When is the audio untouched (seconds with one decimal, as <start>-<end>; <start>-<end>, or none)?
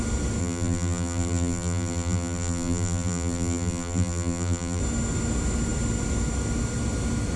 0.0-0.4; 4.8-7.4